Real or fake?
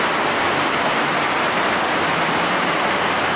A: fake